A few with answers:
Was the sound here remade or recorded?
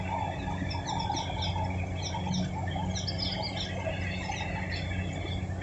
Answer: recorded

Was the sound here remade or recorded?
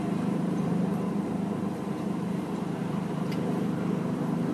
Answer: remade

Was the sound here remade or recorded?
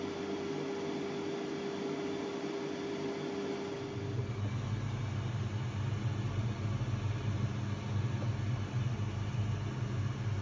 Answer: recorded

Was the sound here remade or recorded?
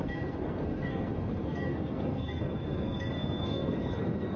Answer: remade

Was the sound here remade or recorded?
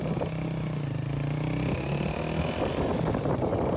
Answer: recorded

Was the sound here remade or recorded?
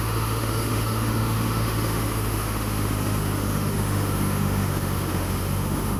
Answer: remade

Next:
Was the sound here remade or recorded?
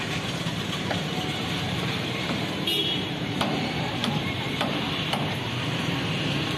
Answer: remade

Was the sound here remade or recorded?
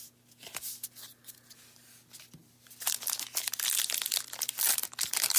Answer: recorded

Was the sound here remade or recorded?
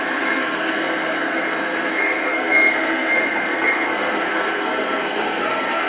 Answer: remade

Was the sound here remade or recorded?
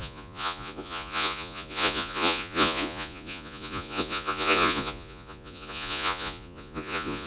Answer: remade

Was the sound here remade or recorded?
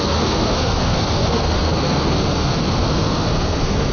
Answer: remade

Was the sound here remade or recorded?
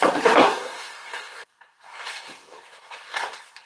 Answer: remade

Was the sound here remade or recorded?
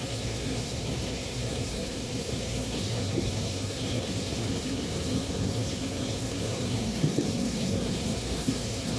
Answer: remade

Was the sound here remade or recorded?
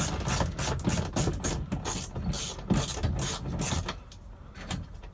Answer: recorded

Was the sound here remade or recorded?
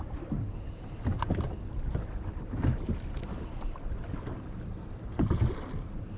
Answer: recorded